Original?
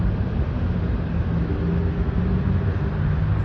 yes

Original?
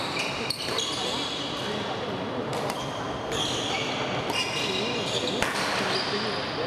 yes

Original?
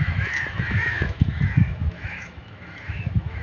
no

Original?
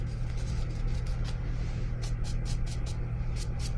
yes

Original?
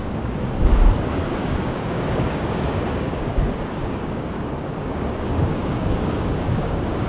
no